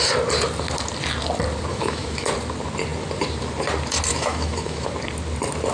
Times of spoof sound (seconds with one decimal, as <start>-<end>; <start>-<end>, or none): 1.7-2.3; 4.1-4.9

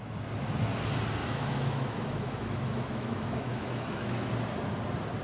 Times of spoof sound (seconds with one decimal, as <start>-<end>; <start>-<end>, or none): 1.2-4.3

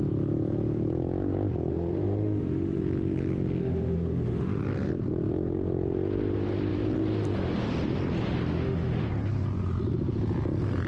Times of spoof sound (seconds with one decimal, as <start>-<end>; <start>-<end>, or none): 1.7-2.8; 3.6-4.6; 8.5-9.0

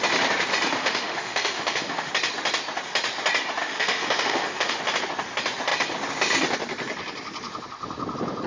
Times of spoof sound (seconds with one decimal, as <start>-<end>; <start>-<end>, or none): 0.8-2.1; 3.6-4.8

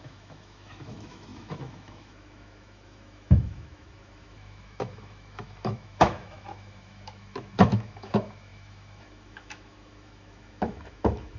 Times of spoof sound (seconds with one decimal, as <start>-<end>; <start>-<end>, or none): 0.0-11.4

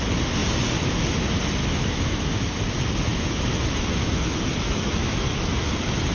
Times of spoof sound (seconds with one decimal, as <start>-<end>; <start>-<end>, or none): 1.6-2.6; 3.1-5.5